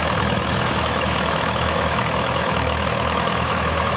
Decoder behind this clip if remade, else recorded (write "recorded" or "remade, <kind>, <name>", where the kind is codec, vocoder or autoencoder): remade, autoencoder, DAC-VAE